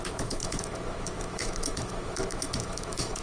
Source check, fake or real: fake